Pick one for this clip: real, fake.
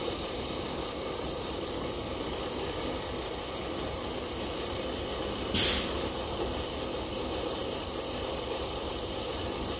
real